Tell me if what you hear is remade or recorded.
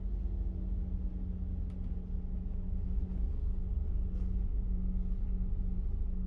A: recorded